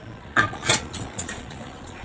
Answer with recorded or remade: remade